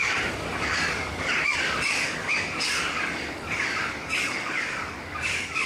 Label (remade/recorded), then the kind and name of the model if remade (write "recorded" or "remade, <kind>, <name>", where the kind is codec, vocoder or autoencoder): remade, codec, DAC